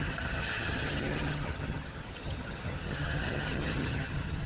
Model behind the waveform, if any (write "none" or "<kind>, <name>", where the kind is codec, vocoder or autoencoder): vocoder, HiFi-GAN